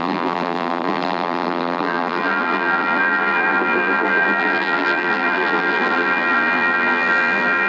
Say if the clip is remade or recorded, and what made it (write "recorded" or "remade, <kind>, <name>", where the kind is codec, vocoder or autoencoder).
remade, vocoder, BigVGAN v2